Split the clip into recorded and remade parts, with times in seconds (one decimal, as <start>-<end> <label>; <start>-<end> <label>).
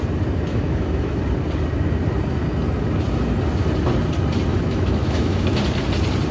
0.0-0.5 recorded; 0.5-1.2 remade; 1.2-4.5 recorded; 4.5-5.6 remade; 5.6-6.3 recorded